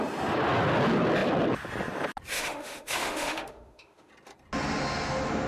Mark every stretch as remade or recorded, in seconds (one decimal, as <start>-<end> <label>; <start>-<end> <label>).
0.0-2.3 recorded; 2.3-4.1 remade; 4.1-5.5 recorded